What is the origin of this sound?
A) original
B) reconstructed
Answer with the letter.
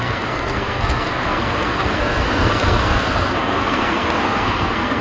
B